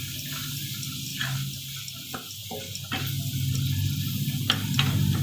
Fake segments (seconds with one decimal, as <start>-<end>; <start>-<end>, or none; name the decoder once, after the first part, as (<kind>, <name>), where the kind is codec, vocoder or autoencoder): none